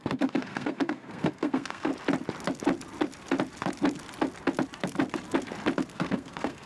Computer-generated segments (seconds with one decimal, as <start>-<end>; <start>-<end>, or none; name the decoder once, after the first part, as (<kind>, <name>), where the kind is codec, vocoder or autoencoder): 0.0-1.9 (codec, SNAC); 5.9-6.7